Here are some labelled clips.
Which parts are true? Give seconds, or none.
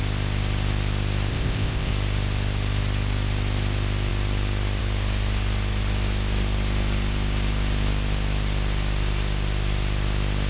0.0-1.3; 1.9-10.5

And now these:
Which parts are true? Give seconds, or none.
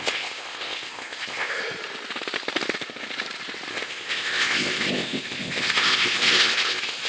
1.6-3.7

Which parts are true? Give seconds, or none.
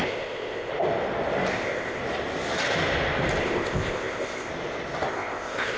0.7-1.5; 2.0-3.4; 4.5-5.1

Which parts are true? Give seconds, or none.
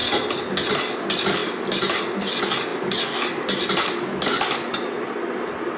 0.0-5.8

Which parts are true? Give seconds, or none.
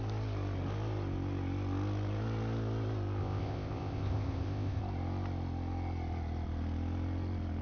0.0-3.2; 4.8-7.6